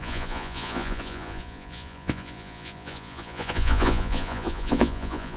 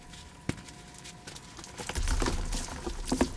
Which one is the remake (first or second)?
first